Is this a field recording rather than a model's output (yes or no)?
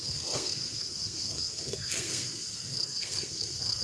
no